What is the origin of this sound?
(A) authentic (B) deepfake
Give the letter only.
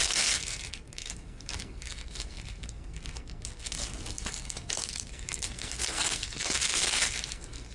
B